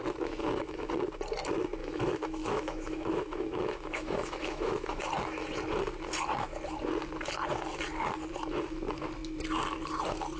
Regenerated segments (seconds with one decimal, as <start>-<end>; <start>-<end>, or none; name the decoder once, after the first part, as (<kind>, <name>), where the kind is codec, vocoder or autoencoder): 0.4-0.9 (autoencoder, DAC-VAE); 1.8-5.1